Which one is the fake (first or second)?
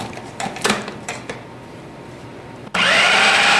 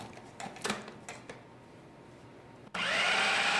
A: first